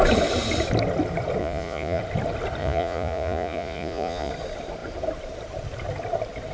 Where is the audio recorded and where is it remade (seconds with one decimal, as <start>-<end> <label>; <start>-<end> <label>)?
0.0-1.4 recorded; 1.4-2.0 remade; 2.0-2.6 recorded; 2.6-4.3 remade; 4.3-6.5 recorded

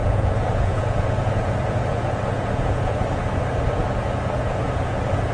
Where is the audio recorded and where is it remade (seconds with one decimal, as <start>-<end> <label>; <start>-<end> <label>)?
0.0-3.2 remade; 3.2-4.4 recorded; 4.4-5.3 remade

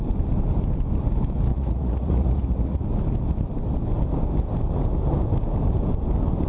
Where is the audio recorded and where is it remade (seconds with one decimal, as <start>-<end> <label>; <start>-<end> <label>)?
0.0-1.5 recorded; 1.5-2.8 remade; 2.8-6.5 recorded

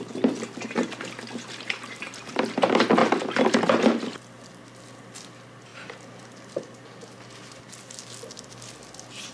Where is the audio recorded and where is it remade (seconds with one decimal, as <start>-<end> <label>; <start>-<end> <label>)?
0.0-9.3 recorded